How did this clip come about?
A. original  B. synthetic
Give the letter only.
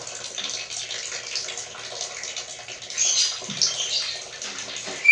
A